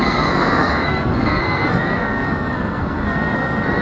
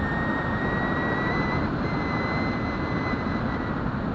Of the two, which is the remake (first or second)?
first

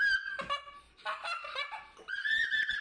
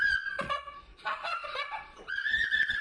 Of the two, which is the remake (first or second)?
second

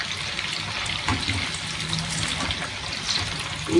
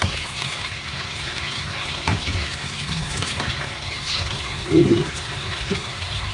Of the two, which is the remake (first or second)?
second